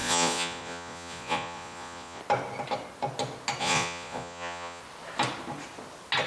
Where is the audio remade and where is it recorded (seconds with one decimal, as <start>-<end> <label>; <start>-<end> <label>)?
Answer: 0.0-2.2 remade; 2.2-3.6 recorded; 3.6-4.8 remade; 4.8-6.3 recorded